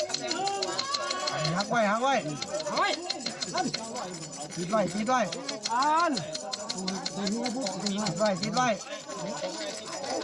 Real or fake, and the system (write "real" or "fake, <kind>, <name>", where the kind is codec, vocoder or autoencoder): real